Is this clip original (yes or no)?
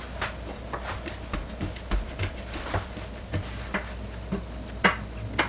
yes